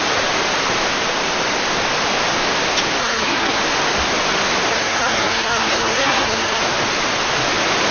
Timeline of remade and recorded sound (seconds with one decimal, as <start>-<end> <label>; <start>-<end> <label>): 0.0-3.0 recorded; 3.0-3.6 remade; 3.6-4.7 recorded; 4.7-6.6 remade; 6.6-7.9 recorded